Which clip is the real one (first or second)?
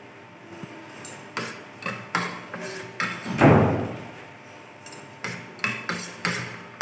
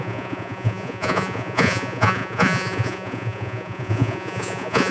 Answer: first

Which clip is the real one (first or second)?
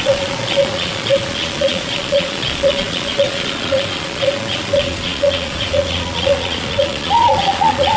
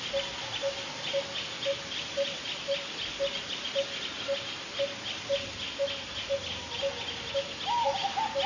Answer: second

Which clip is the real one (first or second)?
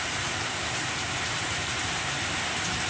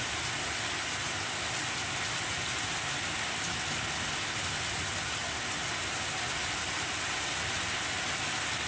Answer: second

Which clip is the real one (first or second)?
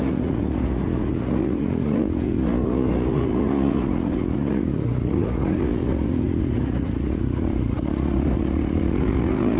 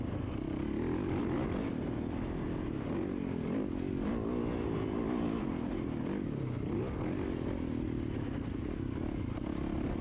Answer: second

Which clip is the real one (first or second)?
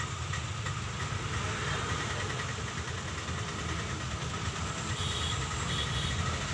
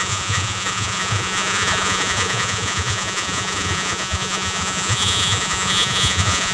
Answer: first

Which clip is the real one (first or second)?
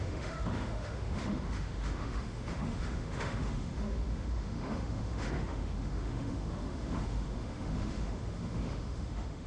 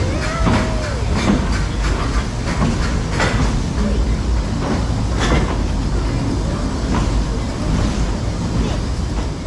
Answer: second